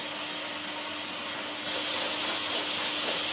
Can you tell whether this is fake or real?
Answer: real